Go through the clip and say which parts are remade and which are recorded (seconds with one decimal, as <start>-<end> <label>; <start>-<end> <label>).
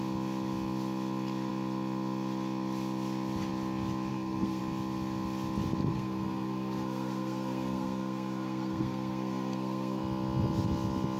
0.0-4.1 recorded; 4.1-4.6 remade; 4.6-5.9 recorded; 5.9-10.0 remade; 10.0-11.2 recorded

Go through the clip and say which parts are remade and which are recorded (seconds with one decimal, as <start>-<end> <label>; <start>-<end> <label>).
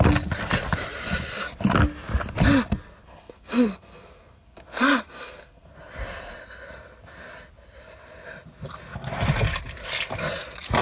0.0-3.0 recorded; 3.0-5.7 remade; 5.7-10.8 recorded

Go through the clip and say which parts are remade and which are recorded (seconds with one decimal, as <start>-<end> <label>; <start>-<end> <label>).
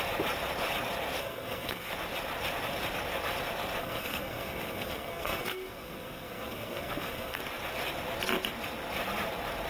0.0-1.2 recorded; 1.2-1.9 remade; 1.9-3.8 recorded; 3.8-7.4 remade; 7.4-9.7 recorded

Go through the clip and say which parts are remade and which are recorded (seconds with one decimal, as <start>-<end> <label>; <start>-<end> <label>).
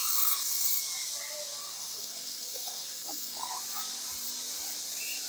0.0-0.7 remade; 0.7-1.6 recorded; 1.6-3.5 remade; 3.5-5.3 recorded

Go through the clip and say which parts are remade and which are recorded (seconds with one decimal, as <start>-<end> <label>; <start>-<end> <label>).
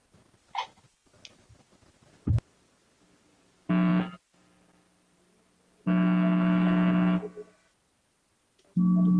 0.0-9.2 recorded